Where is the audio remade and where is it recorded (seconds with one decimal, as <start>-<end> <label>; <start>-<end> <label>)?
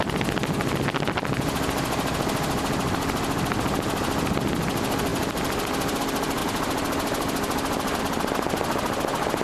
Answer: 0.0-5.1 recorded; 5.1-6.0 remade; 6.0-6.4 recorded; 6.4-8.0 remade; 8.0-9.4 recorded